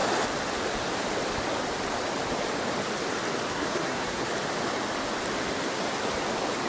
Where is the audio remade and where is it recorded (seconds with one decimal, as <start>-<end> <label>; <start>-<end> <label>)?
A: 0.0-3.5 recorded; 3.5-4.3 remade; 4.3-6.7 recorded